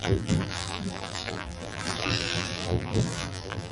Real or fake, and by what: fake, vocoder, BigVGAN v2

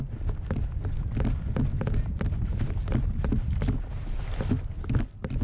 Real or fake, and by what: real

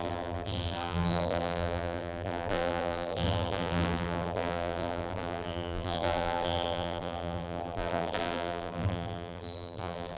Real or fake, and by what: fake, vocoder, BigVGAN v2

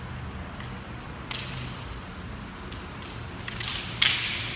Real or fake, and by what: real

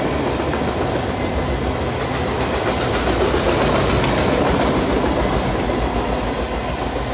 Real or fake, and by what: real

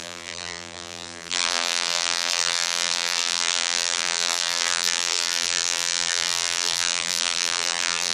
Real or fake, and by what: fake, vocoder, BigVGAN v2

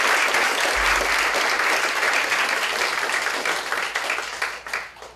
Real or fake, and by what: real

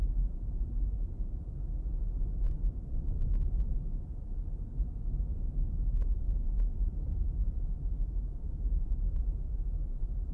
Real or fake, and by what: fake, vocoder, BigVGAN v2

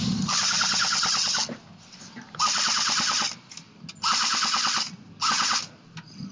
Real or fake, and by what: real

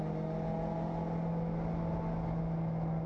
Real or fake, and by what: real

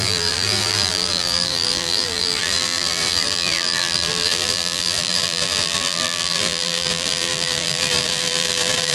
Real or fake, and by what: fake, vocoder, BigVGAN v2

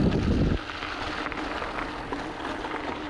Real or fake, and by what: real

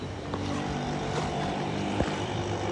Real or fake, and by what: fake, vocoder, BigVGAN v2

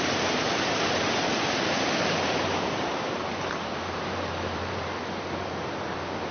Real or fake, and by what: fake, vocoder, BigVGAN v2